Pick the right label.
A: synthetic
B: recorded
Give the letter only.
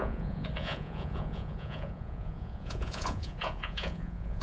A